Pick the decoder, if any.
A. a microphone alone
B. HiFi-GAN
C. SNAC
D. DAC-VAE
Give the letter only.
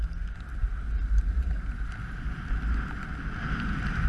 A